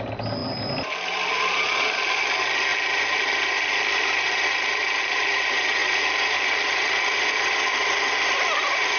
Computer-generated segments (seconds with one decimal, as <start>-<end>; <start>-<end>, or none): none